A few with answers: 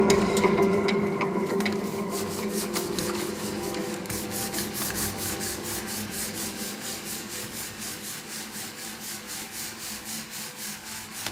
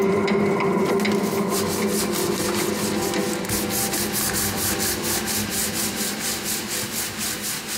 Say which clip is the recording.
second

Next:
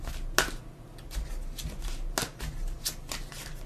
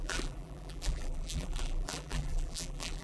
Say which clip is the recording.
first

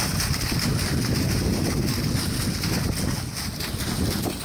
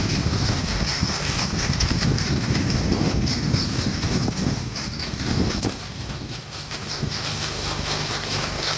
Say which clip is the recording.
first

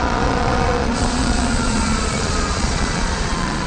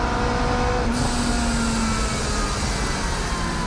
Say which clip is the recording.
second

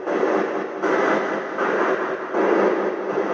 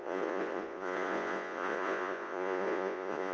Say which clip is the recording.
first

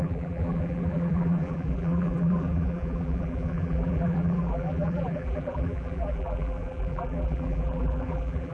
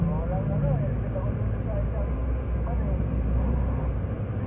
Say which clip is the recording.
second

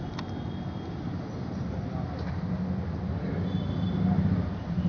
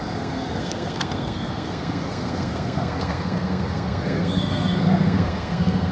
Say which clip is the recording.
first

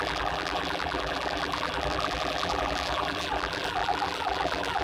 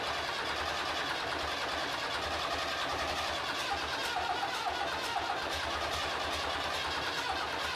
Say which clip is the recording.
second